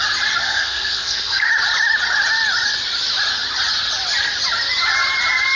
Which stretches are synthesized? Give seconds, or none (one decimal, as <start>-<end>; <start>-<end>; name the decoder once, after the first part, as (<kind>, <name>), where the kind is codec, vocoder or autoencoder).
0.4-1.5 (codec, SNAC)